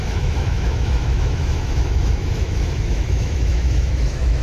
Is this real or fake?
fake